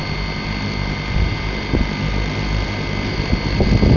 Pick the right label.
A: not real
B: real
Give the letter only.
B